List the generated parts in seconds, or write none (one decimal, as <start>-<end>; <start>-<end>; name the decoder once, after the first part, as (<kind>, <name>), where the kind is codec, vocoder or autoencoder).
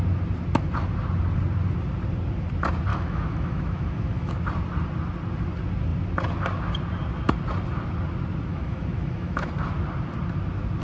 2.9-4.3 (autoencoder, DAC-VAE); 8.5-9.5